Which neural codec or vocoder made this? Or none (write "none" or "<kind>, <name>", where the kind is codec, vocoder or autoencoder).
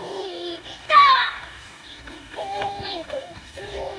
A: codec, DAC